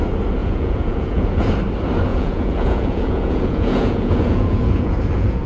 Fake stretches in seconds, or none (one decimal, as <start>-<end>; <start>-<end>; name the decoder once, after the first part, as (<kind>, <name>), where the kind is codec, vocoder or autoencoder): 0.4-1.5 (vocoder, Vocos); 2.1-5.5